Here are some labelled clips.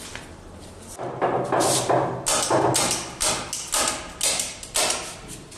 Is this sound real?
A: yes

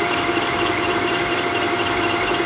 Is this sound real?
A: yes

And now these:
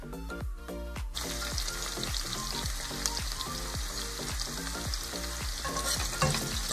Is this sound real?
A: yes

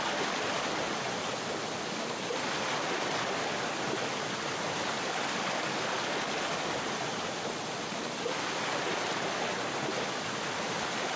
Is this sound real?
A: yes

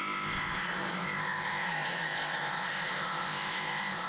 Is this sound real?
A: no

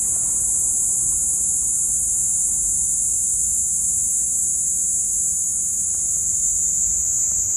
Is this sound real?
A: yes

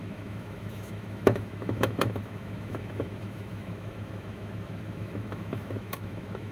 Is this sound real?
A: no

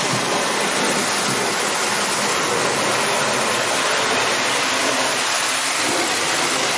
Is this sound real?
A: yes